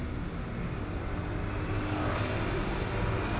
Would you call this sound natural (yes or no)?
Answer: yes